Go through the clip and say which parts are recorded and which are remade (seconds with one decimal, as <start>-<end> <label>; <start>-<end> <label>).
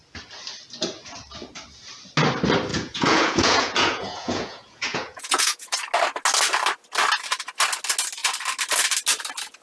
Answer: 0.0-2.7 recorded; 2.7-5.8 remade; 5.8-9.6 recorded